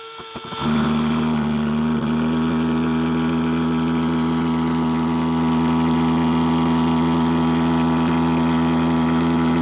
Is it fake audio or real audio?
real